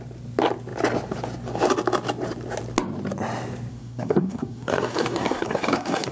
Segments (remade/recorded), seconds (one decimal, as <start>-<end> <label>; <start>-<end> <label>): 0.0-3.7 recorded; 3.7-6.1 remade